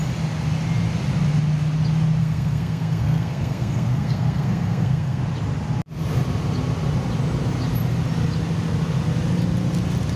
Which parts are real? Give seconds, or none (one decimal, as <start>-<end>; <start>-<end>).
0.0-2.2; 5.2-10.2